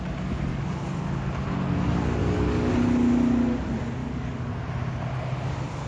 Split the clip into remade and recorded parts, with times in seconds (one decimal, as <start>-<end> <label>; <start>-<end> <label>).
0.0-0.5 recorded; 0.5-1.0 remade; 1.0-2.2 recorded; 2.2-2.7 remade; 2.7-4.0 recorded; 4.0-4.5 remade; 4.5-5.9 recorded